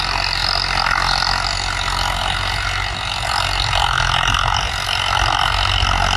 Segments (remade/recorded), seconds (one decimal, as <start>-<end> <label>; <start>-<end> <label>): 0.0-6.2 recorded